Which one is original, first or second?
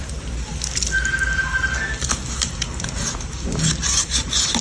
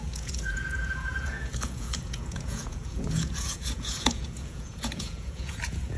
first